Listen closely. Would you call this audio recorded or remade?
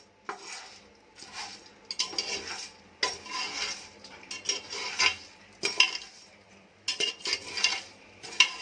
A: recorded